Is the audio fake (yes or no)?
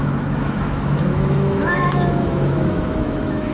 yes